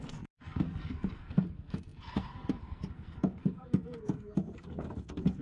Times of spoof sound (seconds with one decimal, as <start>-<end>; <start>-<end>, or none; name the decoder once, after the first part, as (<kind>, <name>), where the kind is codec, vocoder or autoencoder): 0.0-5.4 (codec, SNAC)